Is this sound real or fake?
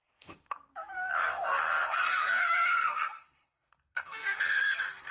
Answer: fake